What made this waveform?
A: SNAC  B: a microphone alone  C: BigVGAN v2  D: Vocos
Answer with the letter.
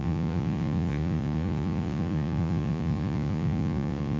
D